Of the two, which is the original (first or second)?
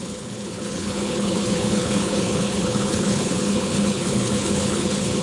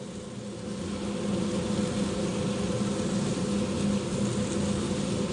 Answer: second